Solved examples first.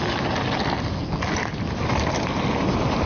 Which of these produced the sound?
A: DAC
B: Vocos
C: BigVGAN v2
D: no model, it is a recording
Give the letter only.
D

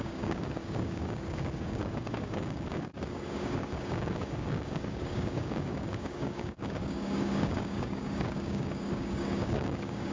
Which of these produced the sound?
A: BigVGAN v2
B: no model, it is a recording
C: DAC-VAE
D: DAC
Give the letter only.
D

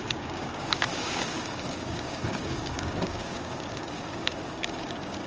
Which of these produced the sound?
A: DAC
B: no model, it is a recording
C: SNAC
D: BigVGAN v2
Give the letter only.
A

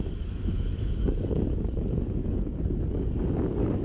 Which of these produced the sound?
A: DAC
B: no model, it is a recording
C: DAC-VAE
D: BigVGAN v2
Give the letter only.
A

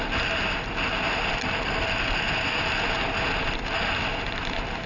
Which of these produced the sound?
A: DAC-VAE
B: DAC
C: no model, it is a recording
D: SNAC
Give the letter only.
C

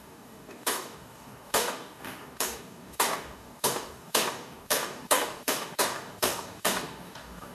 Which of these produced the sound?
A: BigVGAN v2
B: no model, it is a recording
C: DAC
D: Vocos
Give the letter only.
C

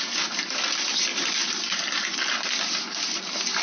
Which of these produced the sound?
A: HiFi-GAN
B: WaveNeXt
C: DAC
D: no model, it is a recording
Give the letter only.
D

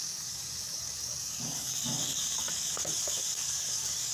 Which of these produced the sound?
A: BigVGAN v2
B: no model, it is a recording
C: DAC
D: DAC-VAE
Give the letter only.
C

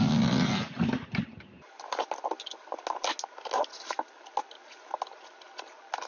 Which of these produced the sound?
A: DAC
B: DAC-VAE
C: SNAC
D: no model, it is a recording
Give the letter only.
D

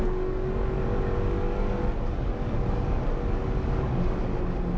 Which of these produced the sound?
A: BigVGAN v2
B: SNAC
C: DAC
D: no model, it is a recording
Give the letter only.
C